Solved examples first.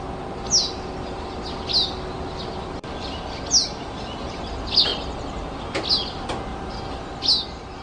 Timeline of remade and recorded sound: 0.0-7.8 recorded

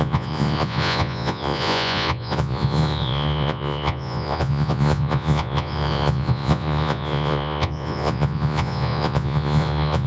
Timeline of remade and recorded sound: 0.0-10.1 remade

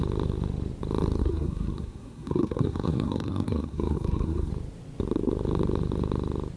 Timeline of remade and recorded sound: 0.0-1.2 recorded; 1.2-4.5 remade; 4.5-6.6 recorded

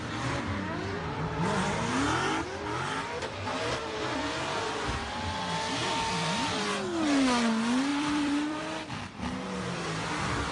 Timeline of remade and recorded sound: 0.0-5.8 recorded; 5.8-6.5 remade; 6.5-7.9 recorded; 7.9-8.6 remade; 8.6-10.5 recorded

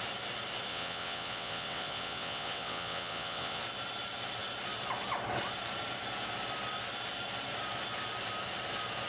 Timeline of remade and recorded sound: 0.0-0.7 recorded; 0.7-3.6 remade; 3.6-9.1 recorded

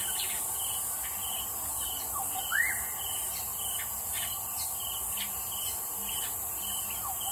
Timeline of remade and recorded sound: 0.0-7.3 recorded